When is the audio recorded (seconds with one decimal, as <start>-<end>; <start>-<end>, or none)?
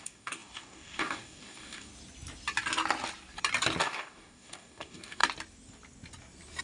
1.9-3.8; 5.2-6.6